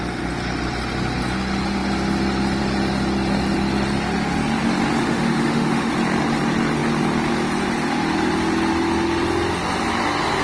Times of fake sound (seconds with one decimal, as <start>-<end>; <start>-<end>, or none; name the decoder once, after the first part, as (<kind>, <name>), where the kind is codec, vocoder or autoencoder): 5.0-5.9 (autoencoder, DAC-VAE)